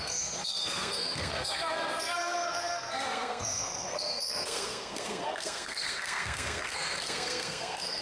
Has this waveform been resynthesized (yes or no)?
yes